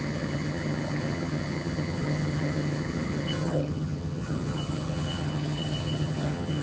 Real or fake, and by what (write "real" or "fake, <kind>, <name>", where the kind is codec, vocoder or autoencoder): fake, vocoder, HiFi-GAN